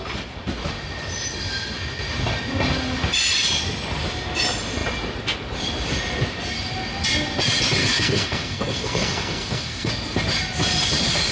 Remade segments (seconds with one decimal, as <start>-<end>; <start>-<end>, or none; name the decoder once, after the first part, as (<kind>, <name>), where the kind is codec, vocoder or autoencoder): 7.8-9.9 (codec, SNAC)